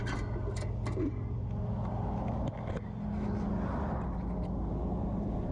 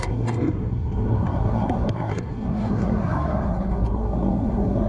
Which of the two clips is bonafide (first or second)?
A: first